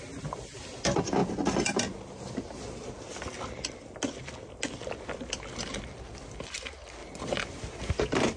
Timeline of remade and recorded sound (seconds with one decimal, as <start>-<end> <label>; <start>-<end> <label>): 0.0-8.4 recorded